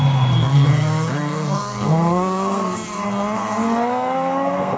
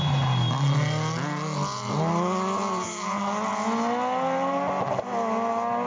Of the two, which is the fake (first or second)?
first